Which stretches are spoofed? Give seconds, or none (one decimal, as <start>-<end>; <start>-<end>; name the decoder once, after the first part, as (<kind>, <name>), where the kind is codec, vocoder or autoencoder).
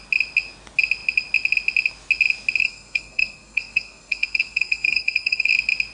2.6-5.5 (codec, SNAC)